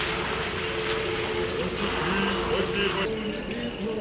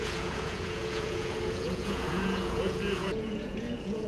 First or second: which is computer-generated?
second